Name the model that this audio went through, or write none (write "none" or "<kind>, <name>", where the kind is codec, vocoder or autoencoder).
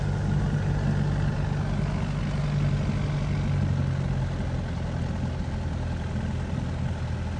none